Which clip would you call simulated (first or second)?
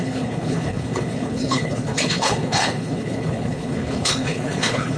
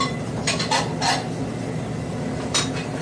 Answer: first